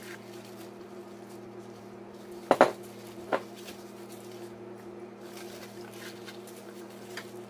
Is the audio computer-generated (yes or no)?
no